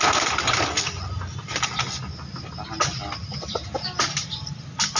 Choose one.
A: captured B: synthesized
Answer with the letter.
A